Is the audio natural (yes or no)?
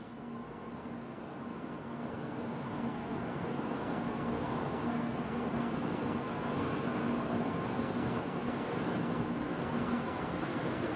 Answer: no